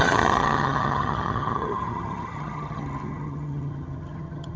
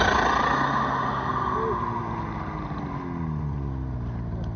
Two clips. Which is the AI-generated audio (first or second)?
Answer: first